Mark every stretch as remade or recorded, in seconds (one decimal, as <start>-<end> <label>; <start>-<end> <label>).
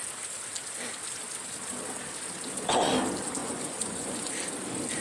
0.0-3.4 recorded; 3.4-4.3 remade; 4.3-5.0 recorded